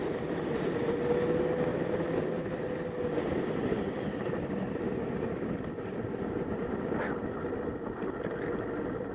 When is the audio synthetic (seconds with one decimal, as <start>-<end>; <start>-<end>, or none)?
none